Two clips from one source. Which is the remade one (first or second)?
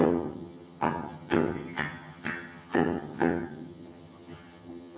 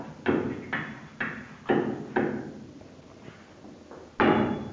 first